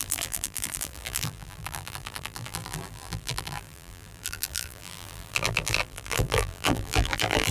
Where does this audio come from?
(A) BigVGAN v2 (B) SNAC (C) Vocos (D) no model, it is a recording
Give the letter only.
A